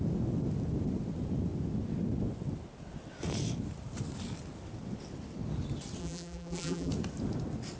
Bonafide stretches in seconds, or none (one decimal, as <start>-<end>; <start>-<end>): 0.0-6.0; 6.9-7.8